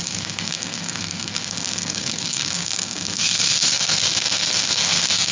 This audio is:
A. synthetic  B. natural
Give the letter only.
A